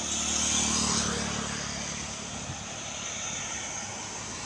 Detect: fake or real real